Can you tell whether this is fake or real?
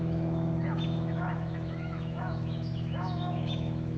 fake